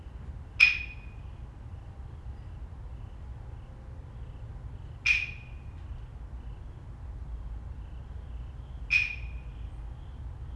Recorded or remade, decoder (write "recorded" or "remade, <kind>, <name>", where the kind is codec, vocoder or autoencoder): recorded